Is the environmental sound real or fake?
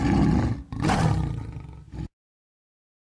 real